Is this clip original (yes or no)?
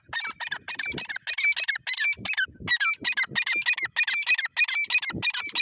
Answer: yes